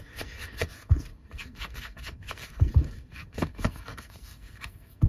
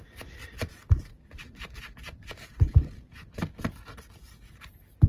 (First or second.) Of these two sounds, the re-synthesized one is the first